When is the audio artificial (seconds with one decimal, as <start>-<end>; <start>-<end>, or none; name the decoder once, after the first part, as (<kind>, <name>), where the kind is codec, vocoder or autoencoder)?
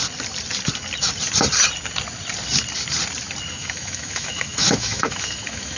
3.5-5.8 (autoencoder, DAC-VAE)